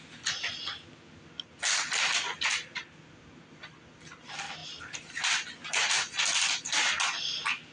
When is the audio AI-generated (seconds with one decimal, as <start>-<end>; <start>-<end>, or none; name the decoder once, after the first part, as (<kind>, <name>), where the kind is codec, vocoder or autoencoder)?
none